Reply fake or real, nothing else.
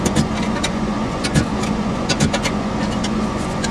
fake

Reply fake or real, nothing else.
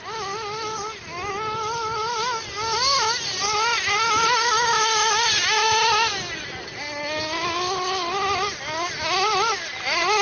real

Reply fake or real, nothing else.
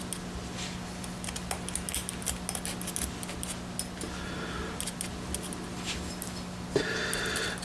real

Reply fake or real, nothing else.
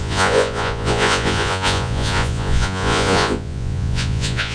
fake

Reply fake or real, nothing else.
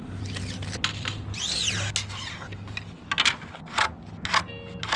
real